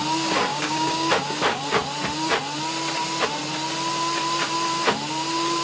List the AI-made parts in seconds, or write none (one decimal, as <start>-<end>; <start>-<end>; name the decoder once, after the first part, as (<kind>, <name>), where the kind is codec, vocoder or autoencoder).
0.5-1.1 (codec, DAC)